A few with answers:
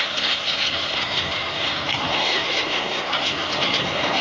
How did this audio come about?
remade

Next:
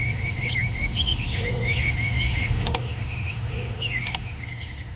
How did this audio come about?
remade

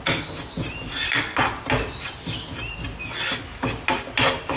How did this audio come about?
recorded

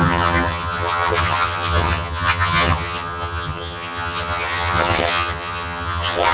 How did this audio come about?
remade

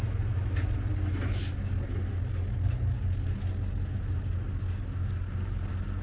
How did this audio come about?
recorded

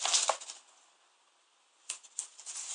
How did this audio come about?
recorded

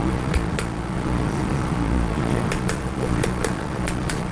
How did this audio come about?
remade